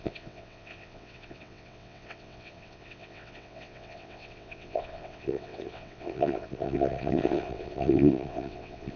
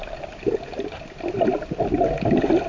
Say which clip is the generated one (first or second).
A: first